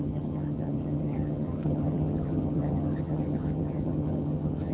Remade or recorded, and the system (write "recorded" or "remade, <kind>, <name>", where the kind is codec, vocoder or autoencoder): remade, vocoder, HiFi-GAN